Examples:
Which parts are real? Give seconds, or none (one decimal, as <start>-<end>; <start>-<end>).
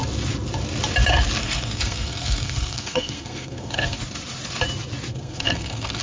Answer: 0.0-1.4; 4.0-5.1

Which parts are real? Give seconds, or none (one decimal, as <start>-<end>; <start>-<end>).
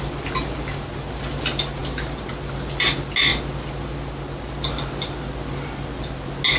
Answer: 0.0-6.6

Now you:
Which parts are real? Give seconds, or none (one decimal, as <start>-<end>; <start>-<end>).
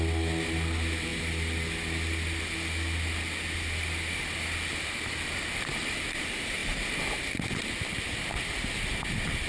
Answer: 0.0-9.5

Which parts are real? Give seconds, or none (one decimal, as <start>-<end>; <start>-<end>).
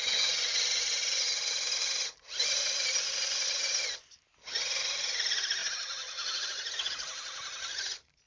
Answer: 0.0-8.3